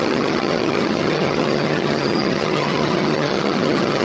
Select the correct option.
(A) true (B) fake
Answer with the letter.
B